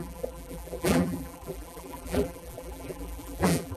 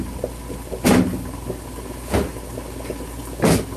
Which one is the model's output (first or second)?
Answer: first